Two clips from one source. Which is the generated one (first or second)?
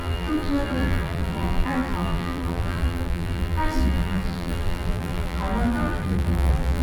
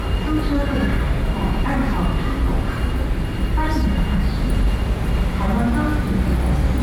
first